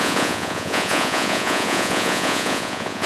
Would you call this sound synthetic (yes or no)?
yes